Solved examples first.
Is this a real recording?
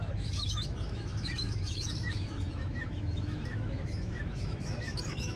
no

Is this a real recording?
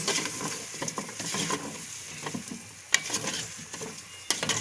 yes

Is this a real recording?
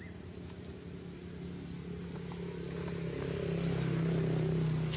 yes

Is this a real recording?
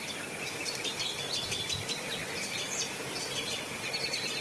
yes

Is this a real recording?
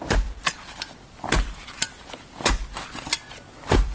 yes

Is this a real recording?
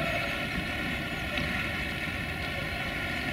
yes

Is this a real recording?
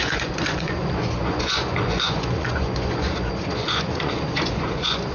no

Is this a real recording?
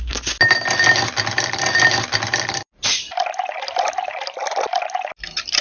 yes